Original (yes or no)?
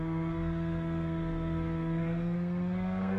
no